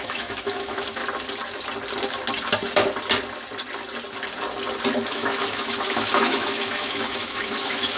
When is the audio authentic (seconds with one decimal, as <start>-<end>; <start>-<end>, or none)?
1.0-5.1